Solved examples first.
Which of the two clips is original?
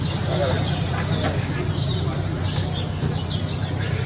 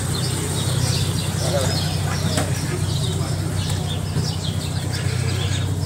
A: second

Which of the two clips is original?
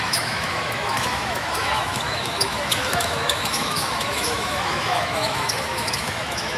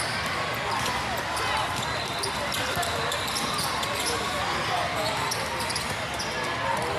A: second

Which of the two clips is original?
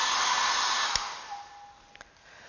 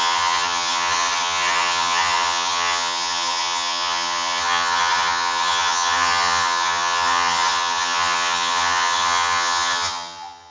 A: first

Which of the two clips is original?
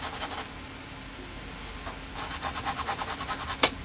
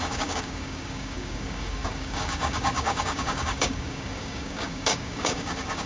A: first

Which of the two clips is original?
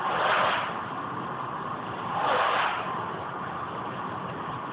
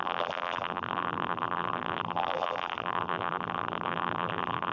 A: first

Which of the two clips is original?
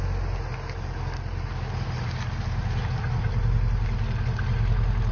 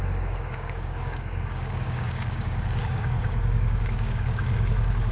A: first